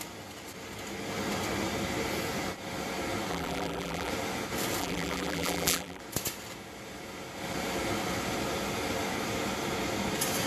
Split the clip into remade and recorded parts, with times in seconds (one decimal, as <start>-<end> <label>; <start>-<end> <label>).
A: 0.0-3.3 recorded; 3.3-4.1 remade; 4.1-4.8 recorded; 4.8-6.0 remade; 6.0-10.5 recorded